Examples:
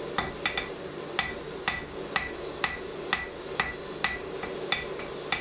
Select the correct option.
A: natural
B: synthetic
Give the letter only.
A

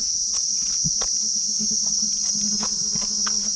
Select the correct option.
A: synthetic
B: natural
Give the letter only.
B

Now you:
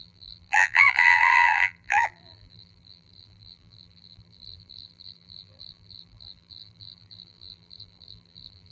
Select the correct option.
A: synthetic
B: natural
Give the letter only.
A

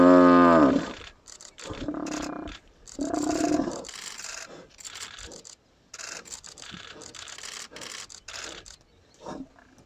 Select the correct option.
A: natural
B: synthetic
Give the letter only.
A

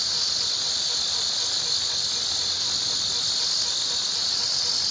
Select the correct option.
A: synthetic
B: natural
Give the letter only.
B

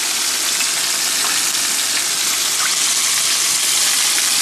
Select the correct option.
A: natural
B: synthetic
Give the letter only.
A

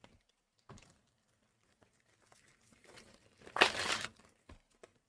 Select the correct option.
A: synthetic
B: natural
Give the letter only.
A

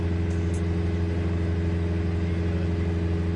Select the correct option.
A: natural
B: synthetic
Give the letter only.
A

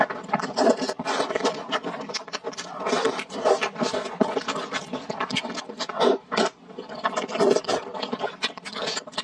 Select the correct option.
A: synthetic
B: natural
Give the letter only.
A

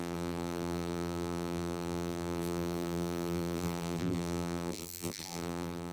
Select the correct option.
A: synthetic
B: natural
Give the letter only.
A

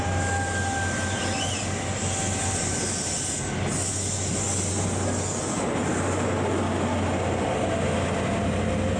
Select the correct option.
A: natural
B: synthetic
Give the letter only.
A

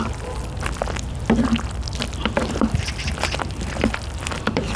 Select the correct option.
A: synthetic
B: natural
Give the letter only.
B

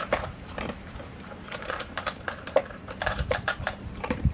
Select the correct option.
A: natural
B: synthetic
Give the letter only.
B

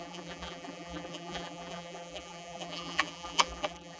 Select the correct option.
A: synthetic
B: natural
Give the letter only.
A